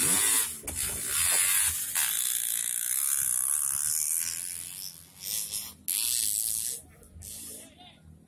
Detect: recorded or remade recorded